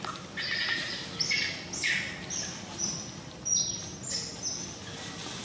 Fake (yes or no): no